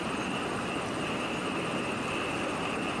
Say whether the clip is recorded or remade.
recorded